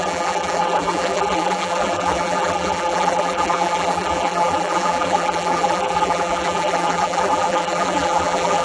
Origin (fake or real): fake